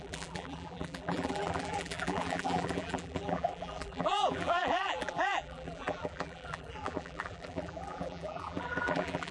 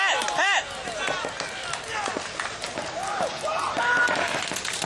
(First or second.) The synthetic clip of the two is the first